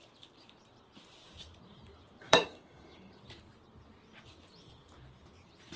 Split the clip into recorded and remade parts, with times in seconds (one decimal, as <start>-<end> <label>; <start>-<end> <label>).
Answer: 0.0-2.2 recorded; 2.2-3.2 remade; 3.2-5.8 recorded